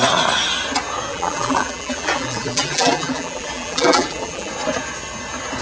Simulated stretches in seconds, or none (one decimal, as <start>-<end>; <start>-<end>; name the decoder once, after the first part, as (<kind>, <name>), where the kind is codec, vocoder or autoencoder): 1.1-4.5 (vocoder, BigVGAN v2)